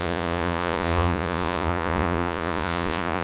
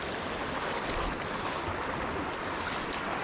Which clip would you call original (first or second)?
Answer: second